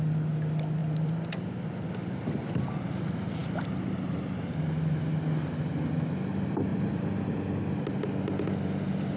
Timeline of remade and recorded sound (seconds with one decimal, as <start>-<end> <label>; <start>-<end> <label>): 0.0-0.8 recorded; 0.8-2.5 remade; 2.5-6.7 recorded; 6.7-7.3 remade; 7.3-9.2 recorded